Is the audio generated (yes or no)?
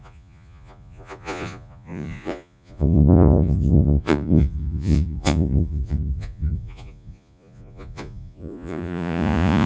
yes